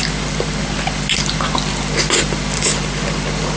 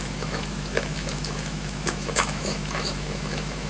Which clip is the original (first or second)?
first